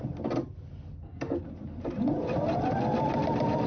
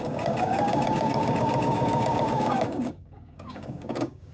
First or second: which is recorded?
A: first